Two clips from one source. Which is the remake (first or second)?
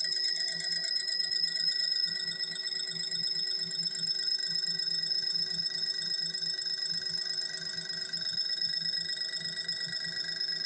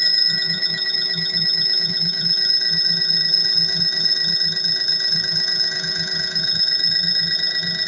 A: second